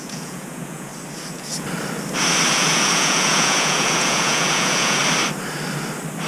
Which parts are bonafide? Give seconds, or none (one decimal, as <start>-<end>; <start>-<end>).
0.9-2.5; 5.0-6.3